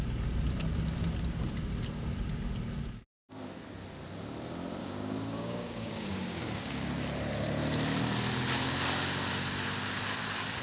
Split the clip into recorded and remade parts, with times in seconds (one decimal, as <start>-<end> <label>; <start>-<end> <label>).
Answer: 0.0-4.8 recorded; 4.8-6.9 remade; 6.9-10.6 recorded